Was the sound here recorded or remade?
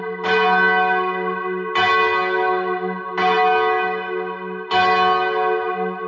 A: recorded